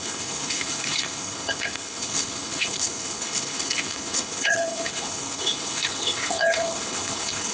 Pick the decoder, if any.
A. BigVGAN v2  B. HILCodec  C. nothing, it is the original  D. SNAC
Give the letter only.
B